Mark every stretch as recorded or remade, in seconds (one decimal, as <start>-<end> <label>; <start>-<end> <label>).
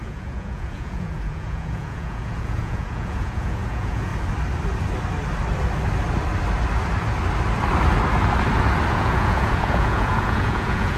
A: 0.0-4.1 remade; 4.1-8.9 recorded; 8.9-11.0 remade